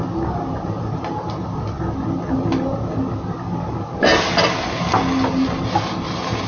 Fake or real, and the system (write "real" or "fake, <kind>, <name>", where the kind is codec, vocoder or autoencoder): real